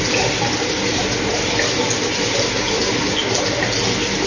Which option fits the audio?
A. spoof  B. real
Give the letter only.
B